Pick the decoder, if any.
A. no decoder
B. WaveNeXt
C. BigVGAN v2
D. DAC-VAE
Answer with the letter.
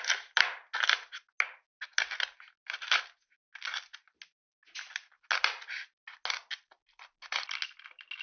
A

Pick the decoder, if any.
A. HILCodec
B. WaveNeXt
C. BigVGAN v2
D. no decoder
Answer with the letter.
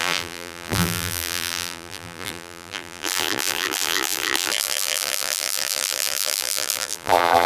C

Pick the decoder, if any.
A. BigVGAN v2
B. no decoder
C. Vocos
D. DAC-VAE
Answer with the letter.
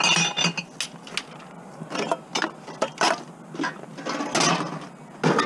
B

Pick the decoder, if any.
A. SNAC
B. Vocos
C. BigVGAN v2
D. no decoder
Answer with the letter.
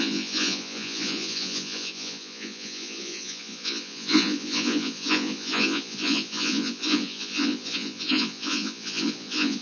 B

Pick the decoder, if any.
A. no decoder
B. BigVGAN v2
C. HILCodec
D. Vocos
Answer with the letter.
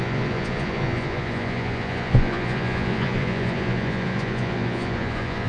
D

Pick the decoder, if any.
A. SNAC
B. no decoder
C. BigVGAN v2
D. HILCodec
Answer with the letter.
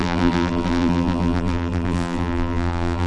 C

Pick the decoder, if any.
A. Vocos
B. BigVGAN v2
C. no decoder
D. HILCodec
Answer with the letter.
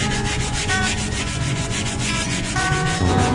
A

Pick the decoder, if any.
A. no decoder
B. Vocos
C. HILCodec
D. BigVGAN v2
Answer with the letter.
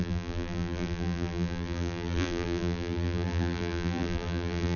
D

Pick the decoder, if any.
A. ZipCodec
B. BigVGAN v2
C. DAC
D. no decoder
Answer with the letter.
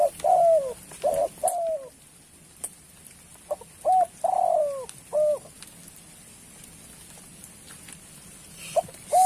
D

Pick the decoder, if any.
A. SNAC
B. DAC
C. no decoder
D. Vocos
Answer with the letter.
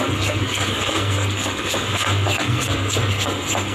A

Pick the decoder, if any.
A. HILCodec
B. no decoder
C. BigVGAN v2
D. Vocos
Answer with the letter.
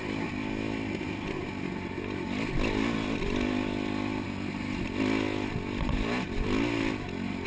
B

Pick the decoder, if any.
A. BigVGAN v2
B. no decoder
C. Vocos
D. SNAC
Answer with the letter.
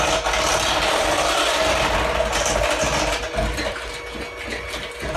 B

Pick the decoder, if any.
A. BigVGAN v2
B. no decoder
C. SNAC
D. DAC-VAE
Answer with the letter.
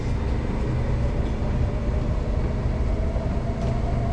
B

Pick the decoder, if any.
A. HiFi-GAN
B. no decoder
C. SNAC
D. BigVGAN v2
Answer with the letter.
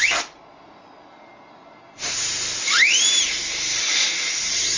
B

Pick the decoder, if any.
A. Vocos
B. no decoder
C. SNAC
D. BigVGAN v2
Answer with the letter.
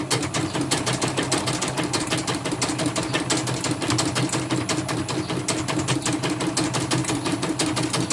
B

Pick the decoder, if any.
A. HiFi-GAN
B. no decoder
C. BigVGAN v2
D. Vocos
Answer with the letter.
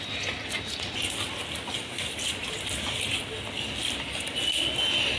B